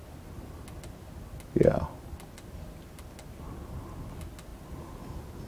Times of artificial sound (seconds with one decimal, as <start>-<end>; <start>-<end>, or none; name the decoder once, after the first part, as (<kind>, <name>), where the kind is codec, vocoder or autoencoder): none